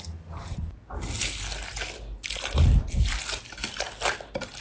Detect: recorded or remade recorded